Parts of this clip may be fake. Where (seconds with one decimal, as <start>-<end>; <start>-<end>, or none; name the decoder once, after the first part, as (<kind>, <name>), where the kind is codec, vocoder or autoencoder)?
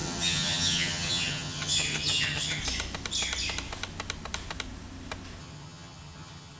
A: 0.0-2.6 (vocoder, HiFi-GAN); 5.4-6.6